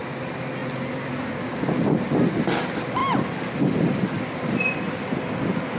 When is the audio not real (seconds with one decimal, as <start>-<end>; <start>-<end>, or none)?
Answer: none